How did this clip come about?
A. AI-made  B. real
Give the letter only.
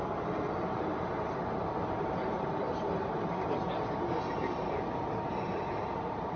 A